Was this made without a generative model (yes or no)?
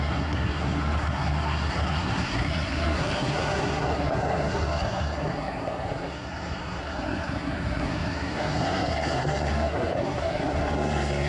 no